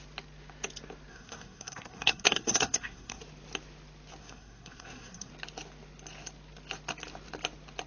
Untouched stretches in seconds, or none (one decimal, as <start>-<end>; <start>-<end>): 0.0-1.1; 3.2-4.2; 5.3-7.9

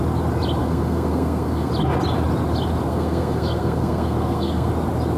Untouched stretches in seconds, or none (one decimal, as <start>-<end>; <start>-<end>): 0.0-0.6; 1.7-2.9; 4.7-5.2